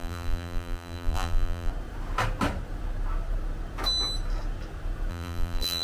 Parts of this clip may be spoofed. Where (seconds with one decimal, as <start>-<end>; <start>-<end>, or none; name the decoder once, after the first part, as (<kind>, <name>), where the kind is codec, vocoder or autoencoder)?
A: 0.0-1.7 (vocoder, BigVGAN v2); 5.1-5.8